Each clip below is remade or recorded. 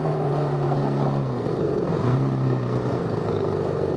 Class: remade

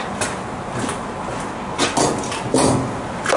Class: recorded